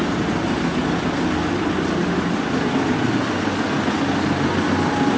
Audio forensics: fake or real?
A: real